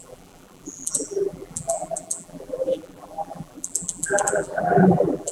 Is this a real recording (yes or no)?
no